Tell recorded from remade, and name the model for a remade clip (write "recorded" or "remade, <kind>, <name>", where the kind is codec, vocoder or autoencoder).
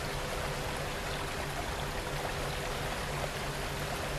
recorded